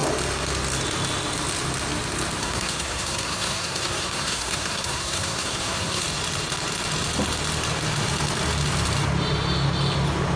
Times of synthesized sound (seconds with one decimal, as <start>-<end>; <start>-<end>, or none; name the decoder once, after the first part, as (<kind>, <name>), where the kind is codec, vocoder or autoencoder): 2.4-6.0 (codec, SNAC)